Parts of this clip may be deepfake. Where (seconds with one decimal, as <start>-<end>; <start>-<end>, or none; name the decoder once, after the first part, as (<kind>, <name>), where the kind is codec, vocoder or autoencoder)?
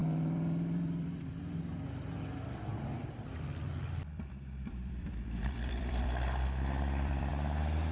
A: 0.0-1.4 (vocoder, BigVGAN v2); 2.7-7.3